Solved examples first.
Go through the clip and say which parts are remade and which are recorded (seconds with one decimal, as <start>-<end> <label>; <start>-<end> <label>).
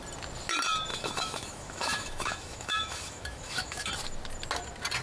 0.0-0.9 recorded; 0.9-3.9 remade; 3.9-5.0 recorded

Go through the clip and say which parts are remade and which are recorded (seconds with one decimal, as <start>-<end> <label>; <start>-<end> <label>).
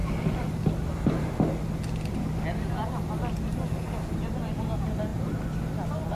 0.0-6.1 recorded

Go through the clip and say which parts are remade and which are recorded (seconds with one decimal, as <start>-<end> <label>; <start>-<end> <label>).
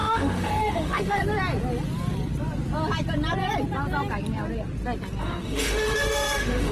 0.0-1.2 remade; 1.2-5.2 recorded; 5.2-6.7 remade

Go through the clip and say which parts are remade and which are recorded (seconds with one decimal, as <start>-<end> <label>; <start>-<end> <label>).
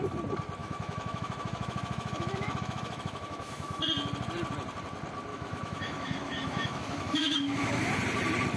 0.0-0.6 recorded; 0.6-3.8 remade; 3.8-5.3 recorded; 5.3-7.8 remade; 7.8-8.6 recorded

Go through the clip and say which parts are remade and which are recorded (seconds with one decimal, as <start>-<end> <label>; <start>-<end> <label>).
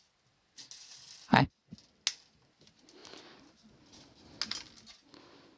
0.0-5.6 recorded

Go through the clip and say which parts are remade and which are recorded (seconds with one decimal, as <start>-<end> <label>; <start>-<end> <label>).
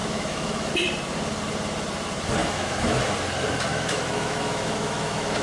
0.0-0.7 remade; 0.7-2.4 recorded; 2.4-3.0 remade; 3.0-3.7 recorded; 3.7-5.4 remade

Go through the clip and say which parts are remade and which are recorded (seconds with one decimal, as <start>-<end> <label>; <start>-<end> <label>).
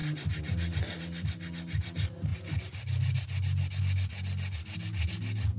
0.0-5.6 recorded